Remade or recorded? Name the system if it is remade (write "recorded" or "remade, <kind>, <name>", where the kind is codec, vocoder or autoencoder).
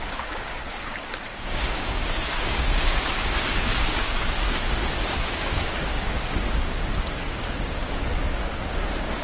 remade, codec, DAC